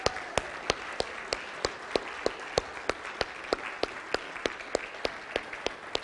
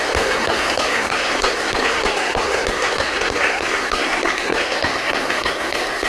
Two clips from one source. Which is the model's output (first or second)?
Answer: second